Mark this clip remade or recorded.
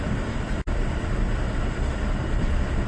recorded